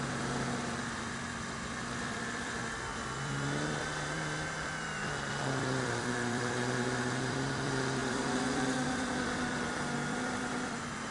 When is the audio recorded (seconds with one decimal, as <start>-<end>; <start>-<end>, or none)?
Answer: none